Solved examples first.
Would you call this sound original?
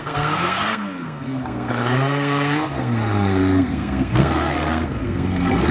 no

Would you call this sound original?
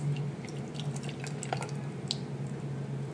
yes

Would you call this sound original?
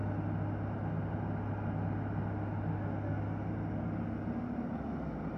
yes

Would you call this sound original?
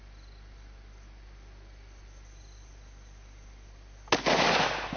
yes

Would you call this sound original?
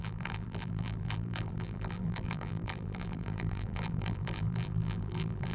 no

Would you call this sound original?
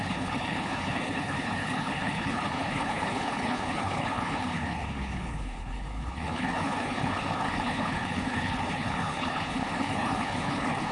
no